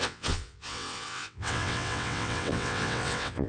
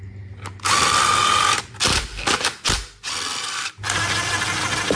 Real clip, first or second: second